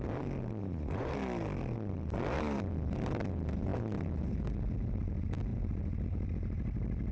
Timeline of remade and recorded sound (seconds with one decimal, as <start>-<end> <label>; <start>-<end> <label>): 0.0-0.6 recorded; 0.6-1.1 remade; 1.1-7.1 recorded